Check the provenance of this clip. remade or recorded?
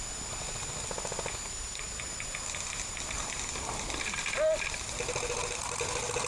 recorded